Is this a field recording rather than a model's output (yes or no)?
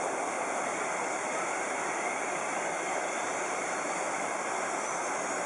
yes